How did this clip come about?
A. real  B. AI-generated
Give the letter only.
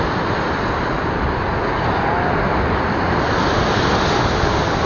A